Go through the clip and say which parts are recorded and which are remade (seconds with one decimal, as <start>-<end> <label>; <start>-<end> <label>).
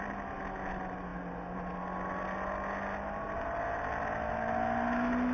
0.0-5.3 recorded